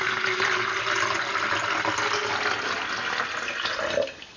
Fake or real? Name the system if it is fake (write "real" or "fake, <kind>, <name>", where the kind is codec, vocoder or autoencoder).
real